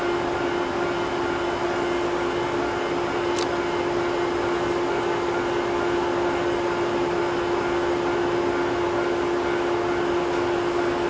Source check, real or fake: real